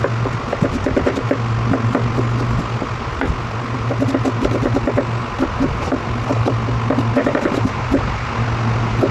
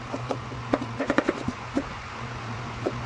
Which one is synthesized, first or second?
second